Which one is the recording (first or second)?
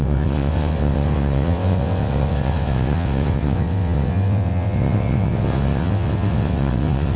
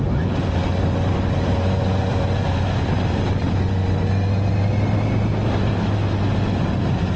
second